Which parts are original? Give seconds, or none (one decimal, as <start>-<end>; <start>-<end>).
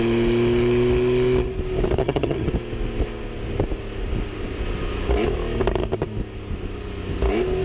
0.0-2.0; 2.5-7.6